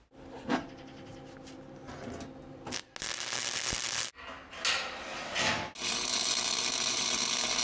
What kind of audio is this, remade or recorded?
recorded